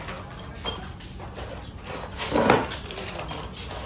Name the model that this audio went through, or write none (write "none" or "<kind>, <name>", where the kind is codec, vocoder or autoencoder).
none